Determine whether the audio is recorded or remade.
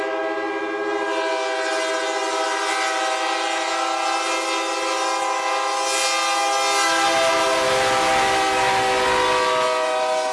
recorded